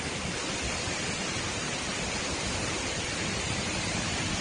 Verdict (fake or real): real